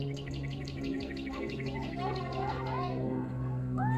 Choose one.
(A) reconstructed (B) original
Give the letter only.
A